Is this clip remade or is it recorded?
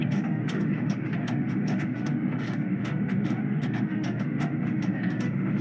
remade